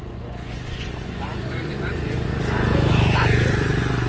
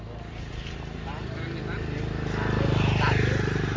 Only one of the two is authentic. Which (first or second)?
second